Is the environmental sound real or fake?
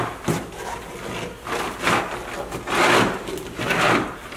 real